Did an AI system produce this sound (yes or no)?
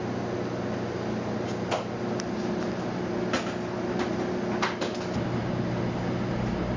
no